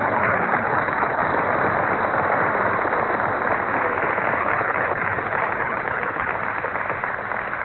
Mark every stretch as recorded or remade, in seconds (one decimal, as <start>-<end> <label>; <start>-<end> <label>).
0.0-1.2 remade; 1.2-4.4 recorded; 4.4-6.3 remade; 6.3-7.6 recorded